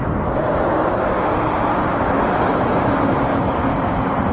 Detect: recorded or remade recorded